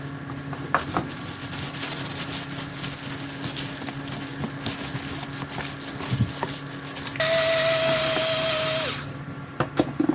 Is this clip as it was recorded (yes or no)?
yes